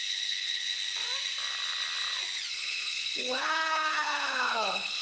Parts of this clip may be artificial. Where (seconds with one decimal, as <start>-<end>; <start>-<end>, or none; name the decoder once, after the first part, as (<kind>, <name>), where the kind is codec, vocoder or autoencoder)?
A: 0.0-0.7 (codec, HILCodec); 2.5-5.0